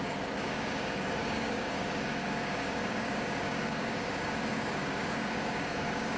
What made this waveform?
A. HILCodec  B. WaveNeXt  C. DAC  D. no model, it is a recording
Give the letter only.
C